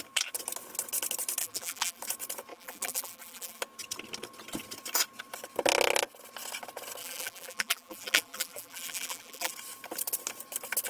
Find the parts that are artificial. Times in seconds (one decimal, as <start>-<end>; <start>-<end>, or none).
1.4-2.0; 2.5-3.6; 7.0-9.5